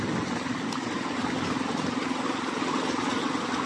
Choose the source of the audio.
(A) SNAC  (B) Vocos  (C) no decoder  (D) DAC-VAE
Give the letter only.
C